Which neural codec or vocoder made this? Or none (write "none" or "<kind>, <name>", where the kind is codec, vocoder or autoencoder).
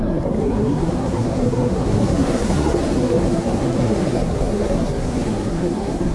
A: codec, SNAC